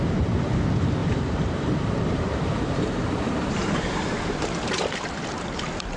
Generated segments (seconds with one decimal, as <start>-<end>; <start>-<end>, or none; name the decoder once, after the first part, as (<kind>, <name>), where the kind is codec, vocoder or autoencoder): 1.0-4.6 (vocoder, BigVGAN v2)